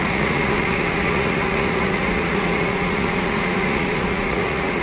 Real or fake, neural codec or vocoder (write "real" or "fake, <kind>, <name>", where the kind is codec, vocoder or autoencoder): fake, vocoder, Vocos